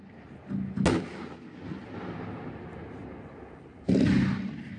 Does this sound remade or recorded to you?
recorded